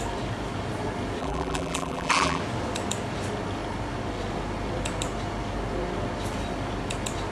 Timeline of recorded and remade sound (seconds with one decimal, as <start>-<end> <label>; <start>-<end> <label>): 0.0-1.2 recorded; 1.2-2.4 remade; 2.4-7.3 recorded